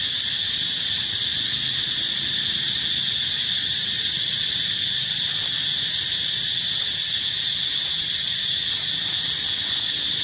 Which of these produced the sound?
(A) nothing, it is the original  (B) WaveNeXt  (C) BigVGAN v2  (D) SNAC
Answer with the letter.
A